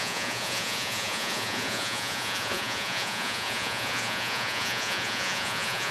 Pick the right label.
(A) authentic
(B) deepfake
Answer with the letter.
B